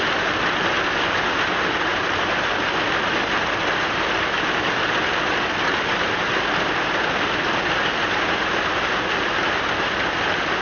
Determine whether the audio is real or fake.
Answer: real